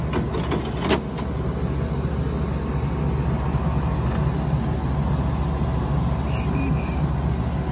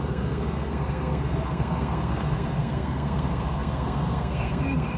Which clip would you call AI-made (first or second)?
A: second